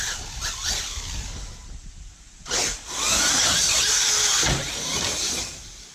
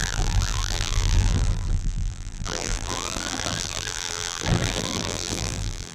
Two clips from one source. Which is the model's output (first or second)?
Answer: second